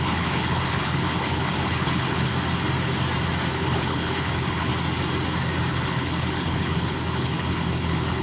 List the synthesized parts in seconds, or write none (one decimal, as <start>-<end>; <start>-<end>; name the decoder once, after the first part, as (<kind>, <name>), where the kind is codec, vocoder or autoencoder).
0.0-2.3 (codec, HILCodec); 3.5-4.7; 5.7-8.2